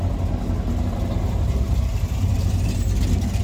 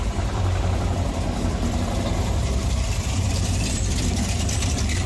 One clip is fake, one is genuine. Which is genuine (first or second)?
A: first